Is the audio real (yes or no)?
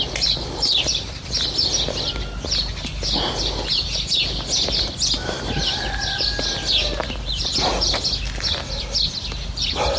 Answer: yes